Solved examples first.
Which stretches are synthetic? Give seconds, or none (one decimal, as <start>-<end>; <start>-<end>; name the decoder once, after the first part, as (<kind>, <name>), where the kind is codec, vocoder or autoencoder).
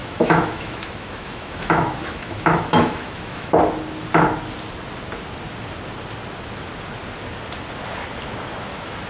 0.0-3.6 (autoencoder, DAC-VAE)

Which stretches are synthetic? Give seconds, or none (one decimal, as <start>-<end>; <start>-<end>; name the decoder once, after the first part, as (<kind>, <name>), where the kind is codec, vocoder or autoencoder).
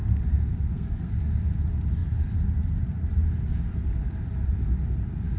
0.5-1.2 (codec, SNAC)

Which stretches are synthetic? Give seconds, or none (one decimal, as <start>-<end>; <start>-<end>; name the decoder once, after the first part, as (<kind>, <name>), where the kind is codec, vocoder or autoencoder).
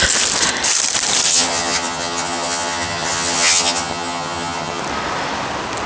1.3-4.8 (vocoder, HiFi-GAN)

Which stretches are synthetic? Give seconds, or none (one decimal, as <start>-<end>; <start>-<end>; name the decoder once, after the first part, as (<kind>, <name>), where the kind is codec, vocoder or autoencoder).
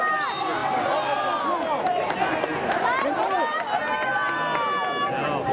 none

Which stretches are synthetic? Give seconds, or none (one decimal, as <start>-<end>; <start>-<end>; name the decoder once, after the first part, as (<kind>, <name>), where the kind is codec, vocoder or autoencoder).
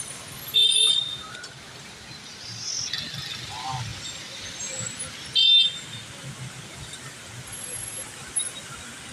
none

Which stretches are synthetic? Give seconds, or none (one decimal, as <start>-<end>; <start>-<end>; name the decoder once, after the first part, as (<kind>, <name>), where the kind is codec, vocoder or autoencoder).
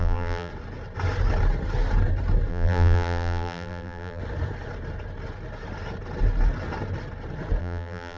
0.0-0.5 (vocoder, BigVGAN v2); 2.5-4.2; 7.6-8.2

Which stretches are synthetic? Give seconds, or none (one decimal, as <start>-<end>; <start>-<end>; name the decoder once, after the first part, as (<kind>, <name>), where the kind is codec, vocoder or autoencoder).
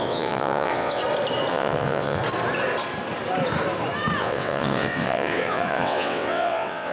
0.0-1.0 (vocoder, WaveNeXt); 1.5-2.2; 4.2-6.9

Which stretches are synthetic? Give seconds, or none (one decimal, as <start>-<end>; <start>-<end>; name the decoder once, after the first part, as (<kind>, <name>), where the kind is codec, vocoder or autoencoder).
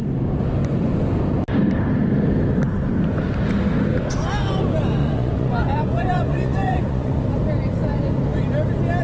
5.0-7.2 (vocoder, Vocos)